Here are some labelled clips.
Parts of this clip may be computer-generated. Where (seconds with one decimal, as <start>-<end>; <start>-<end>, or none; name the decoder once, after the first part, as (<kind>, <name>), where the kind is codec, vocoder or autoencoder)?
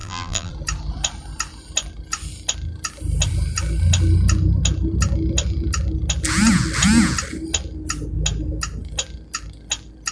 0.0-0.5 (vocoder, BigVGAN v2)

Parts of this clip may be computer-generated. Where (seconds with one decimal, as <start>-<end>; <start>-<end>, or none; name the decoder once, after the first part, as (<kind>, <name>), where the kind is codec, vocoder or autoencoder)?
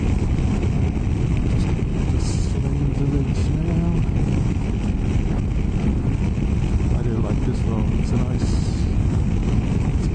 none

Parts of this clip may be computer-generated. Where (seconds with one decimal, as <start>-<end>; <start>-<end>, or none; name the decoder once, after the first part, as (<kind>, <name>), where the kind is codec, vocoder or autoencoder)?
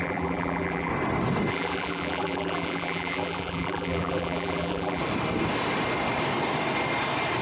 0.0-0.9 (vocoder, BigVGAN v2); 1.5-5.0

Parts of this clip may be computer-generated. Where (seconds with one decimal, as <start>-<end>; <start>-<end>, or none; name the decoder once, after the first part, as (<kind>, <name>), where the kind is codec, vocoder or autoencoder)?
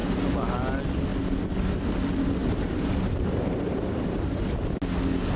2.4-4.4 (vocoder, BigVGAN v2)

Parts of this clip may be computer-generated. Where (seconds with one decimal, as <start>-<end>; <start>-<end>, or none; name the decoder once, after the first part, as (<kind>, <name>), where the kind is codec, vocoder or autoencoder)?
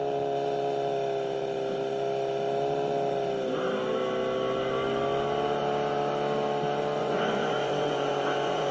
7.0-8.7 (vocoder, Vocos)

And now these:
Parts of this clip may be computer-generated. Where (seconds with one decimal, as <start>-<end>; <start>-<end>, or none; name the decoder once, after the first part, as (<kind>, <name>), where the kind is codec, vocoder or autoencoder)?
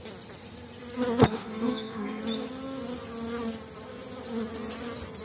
1.3-2.2 (codec, SNAC)